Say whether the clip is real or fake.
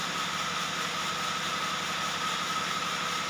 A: real